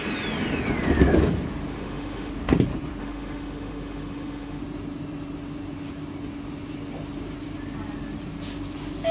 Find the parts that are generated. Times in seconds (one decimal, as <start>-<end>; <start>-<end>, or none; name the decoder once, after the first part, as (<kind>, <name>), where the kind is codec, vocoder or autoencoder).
1.7-2.3 (autoencoder, DAC-VAE); 3.0-4.6